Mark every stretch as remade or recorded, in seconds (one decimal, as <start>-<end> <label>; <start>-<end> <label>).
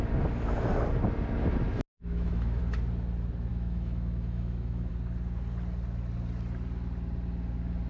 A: 0.0-2.0 recorded; 2.0-2.6 remade; 2.6-3.5 recorded; 3.5-4.9 remade; 4.9-7.9 recorded